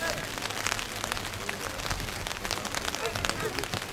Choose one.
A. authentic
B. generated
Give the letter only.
A